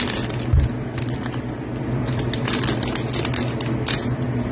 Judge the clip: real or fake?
real